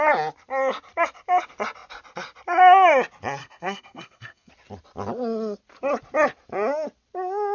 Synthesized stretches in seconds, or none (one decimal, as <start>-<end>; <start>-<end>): 3.4-4.5